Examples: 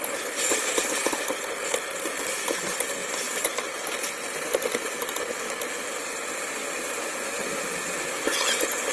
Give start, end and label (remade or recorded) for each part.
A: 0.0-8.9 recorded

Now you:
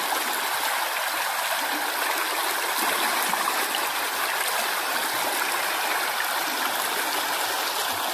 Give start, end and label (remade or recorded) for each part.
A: 0.0-3.1 recorded; 3.1-4.2 remade; 4.2-8.1 recorded

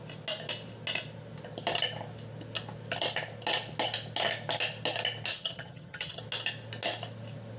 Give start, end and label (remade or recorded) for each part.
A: 0.0-5.3 recorded; 5.3-6.2 remade; 6.2-7.6 recorded

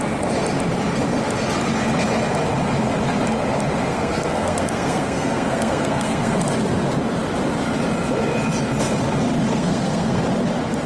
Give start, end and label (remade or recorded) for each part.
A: 0.0-3.9 recorded; 3.9-6.4 remade; 6.4-9.5 recorded; 9.5-10.2 remade; 10.2-10.9 recorded

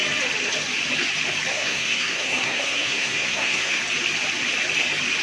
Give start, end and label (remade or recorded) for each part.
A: 0.0-1.5 recorded; 1.5-3.8 remade; 3.8-5.2 recorded

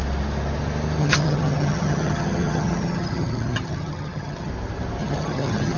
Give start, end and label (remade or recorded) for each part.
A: 0.0-1.0 recorded; 1.0-4.5 remade; 4.5-5.0 recorded; 5.0-5.8 remade

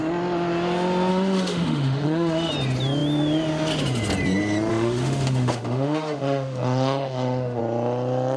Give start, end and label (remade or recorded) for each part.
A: 0.0-1.1 recorded; 1.1-2.5 remade; 2.5-4.7 recorded; 4.7-7.6 remade; 7.6-8.4 recorded